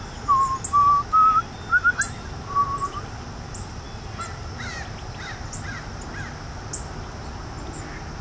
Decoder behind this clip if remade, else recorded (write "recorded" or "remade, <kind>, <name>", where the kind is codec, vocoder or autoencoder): recorded